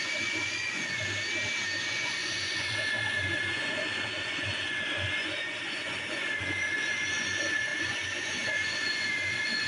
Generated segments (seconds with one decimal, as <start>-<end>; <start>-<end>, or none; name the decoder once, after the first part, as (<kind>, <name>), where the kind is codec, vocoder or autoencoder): 0.0-1.0 (vocoder, Vocos); 1.8-9.7